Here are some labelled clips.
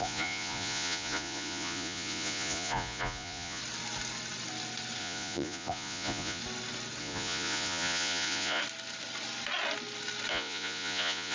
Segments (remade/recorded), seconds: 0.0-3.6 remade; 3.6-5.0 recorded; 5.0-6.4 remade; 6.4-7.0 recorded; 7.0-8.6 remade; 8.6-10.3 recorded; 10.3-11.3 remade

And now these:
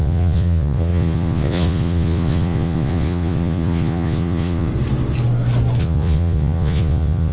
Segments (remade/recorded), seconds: 0.0-4.7 remade; 4.7-5.8 recorded; 5.8-7.3 remade